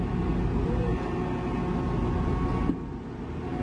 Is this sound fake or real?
real